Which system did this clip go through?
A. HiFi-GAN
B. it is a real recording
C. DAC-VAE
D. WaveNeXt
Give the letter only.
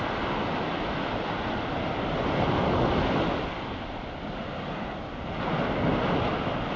B